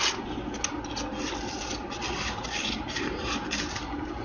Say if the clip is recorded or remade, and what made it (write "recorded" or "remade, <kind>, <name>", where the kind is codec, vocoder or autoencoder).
recorded